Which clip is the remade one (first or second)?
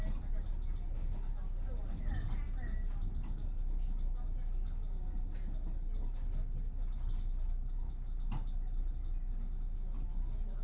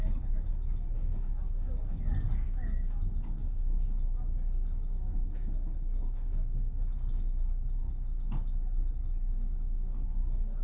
second